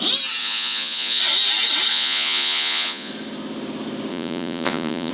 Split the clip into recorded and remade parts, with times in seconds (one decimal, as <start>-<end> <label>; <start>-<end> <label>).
0.0-0.4 recorded; 0.4-1.2 remade; 1.2-1.9 recorded; 1.9-3.1 remade; 3.1-4.1 recorded; 4.1-5.1 remade